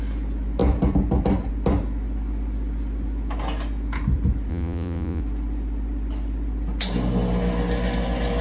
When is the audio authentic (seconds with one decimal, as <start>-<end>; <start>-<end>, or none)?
0.0-4.5; 5.2-8.4